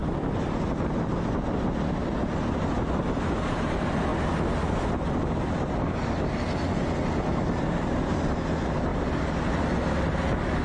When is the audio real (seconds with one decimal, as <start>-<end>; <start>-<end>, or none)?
0.0-10.6